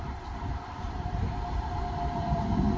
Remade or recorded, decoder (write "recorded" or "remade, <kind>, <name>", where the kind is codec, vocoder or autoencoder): remade, vocoder, BigVGAN v2